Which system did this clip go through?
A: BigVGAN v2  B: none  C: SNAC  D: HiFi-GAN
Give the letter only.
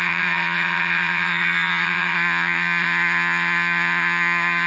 D